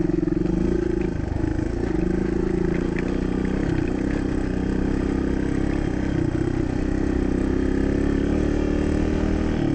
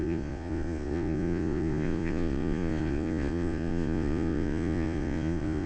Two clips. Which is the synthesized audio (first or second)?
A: second